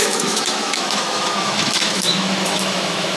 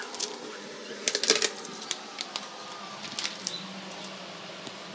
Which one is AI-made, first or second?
first